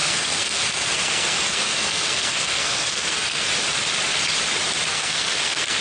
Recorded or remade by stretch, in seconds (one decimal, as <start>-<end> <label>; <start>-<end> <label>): 0.0-3.5 remade; 3.5-4.9 recorded; 4.9-5.8 remade